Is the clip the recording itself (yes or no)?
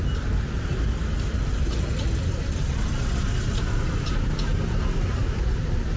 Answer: yes